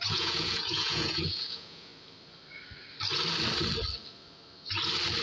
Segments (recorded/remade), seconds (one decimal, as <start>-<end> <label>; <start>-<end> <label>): 0.0-1.9 remade; 1.9-5.2 recorded